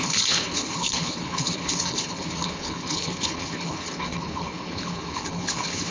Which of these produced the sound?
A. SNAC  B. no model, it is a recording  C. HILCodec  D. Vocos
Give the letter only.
C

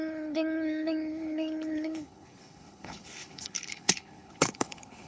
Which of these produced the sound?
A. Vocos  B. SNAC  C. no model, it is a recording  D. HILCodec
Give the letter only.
D